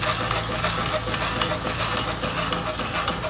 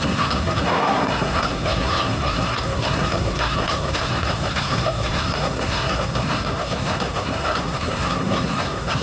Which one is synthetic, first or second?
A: second